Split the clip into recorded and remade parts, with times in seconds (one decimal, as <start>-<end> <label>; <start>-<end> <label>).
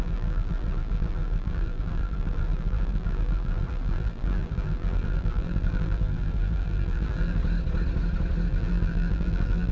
0.0-7.4 remade; 7.4-8.5 recorded; 8.5-9.7 remade